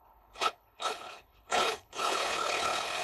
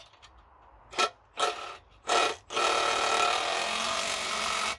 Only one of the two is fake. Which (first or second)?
first